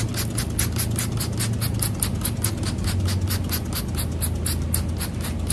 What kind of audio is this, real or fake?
real